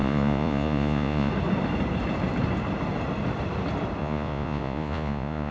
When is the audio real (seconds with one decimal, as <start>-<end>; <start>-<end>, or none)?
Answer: 1.3-4.0